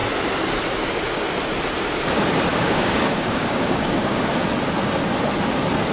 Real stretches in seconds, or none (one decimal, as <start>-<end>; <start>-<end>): 0.0-2.5; 4.3-5.9